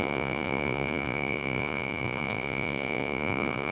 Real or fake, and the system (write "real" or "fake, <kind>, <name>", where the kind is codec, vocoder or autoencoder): fake, vocoder, Vocos